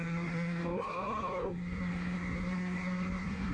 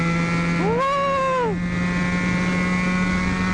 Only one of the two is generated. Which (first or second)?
first